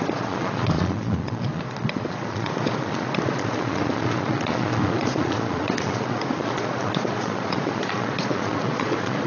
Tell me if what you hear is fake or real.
fake